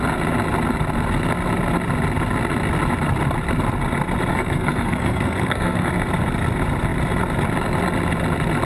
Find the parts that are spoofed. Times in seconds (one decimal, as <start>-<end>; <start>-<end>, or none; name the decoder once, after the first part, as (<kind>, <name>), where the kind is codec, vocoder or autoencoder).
4.3-5.9 (codec, SNAC)